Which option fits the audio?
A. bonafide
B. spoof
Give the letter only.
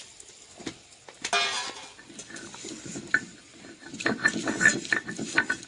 A